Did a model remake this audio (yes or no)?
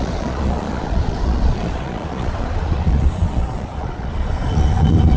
yes